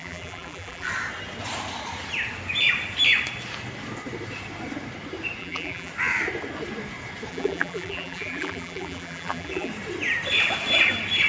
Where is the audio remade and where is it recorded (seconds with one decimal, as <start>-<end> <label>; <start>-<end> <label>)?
0.0-0.9 remade; 0.9-5.4 recorded; 5.4-5.9 remade; 5.9-7.3 recorded; 7.3-9.7 remade; 9.7-11.3 recorded